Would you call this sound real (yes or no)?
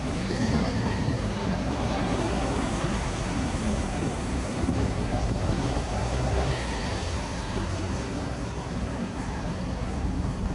no